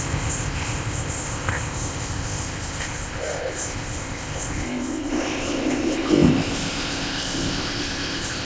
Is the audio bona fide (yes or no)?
no